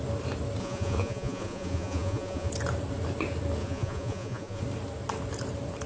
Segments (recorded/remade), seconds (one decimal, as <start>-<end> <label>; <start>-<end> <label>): 0.0-0.6 recorded; 0.6-2.5 remade; 2.5-3.6 recorded; 3.6-4.6 remade; 4.6-5.9 recorded